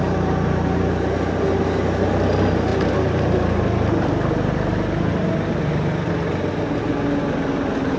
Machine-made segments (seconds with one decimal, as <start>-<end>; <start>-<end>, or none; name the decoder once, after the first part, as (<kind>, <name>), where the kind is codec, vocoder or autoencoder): none